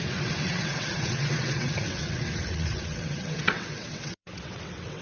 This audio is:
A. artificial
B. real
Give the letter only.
A